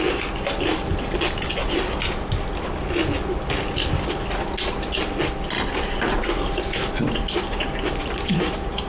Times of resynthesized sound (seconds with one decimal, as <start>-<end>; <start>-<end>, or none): none